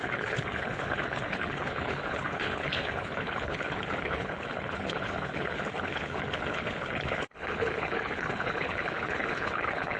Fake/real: fake